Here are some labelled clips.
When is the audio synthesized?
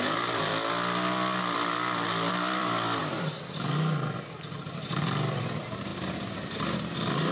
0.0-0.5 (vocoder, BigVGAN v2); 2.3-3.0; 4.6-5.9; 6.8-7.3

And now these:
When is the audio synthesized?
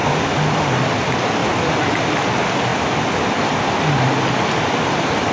none